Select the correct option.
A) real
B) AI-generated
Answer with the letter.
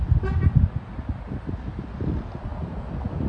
A